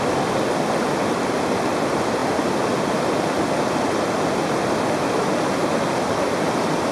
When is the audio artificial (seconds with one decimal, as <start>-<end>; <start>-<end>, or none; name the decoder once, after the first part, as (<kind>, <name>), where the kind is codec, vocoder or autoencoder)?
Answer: none